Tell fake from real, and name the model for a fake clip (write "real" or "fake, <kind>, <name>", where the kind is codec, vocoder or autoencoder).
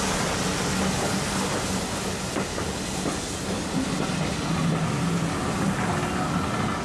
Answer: real